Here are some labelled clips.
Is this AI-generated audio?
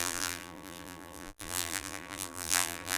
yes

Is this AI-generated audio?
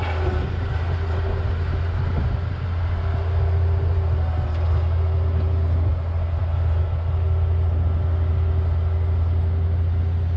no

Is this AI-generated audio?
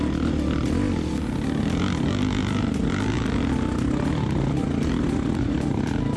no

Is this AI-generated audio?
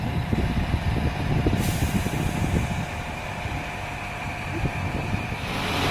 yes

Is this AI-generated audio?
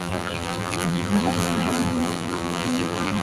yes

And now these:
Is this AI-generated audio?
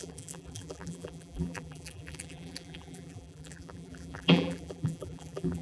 yes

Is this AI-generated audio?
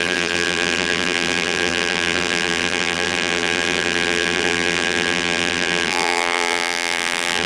yes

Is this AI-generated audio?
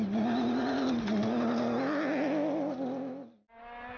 no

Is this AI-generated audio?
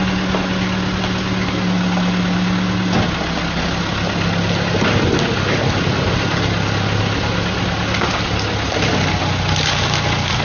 no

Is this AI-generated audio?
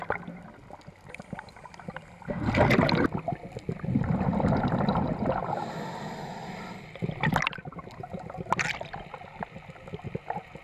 no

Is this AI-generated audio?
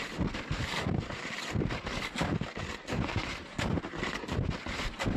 no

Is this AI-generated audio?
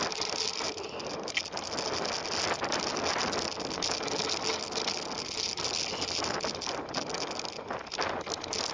no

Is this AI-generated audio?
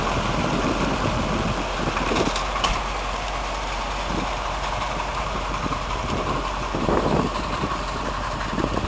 yes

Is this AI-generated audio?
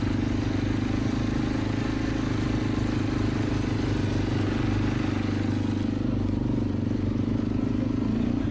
no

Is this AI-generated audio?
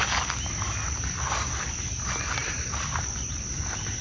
no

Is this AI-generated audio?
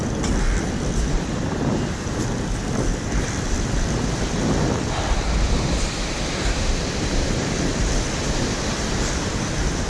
yes